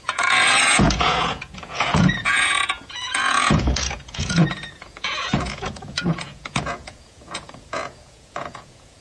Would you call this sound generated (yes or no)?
yes